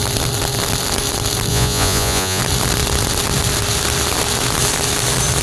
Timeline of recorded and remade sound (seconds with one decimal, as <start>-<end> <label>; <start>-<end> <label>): 0.0-1.5 recorded; 1.5-2.4 remade; 2.4-5.4 recorded